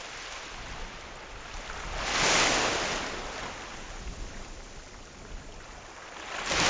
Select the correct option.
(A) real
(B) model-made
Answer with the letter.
A